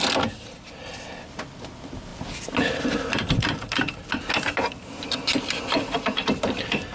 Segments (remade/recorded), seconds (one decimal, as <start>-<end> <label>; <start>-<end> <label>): 0.0-6.9 recorded